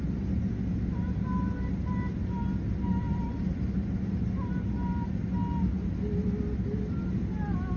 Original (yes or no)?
yes